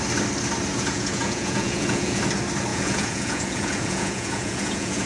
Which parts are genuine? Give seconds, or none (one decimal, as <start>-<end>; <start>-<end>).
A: 0.0-0.7; 2.2-2.7